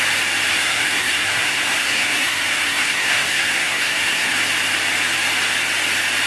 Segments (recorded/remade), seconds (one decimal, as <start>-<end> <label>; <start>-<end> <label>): 0.0-0.5 recorded; 0.5-4.3 remade; 4.3-6.3 recorded